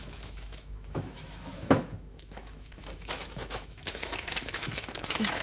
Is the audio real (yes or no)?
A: no